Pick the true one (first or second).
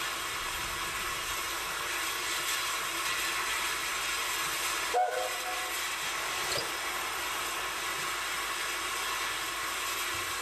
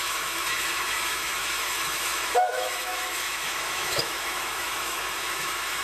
first